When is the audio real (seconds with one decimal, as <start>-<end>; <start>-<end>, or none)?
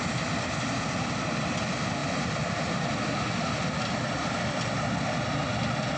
0.0-6.0